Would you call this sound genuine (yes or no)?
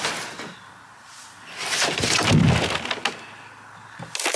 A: yes